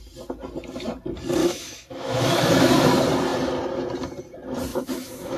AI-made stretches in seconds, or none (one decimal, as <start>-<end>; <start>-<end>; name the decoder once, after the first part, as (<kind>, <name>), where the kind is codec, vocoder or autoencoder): 1.4-2.7 (autoencoder, DAC-VAE); 4.7-5.4